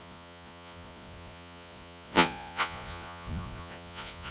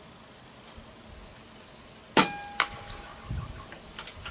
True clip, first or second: second